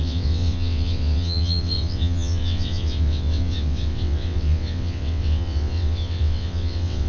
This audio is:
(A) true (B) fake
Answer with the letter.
B